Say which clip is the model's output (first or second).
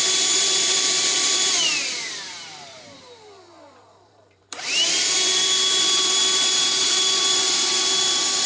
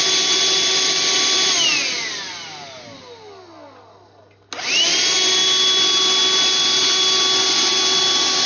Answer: first